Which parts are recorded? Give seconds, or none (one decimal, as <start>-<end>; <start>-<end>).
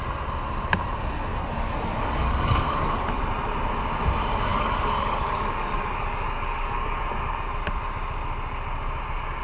0.0-1.3; 3.2-4.5; 7.0-9.4